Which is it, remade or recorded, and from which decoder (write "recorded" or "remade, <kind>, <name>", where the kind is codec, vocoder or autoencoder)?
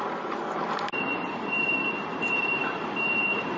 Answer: remade, vocoder, BigVGAN v2